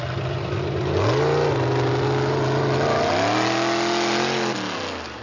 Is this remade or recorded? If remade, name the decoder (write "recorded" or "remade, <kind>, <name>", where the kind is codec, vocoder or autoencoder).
recorded